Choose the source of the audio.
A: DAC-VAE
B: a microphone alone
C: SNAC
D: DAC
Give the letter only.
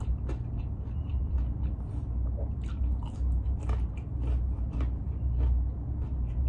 B